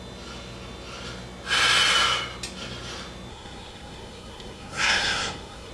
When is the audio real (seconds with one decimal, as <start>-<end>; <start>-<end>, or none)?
0.0-3.3